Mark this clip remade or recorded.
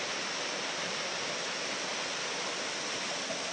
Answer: recorded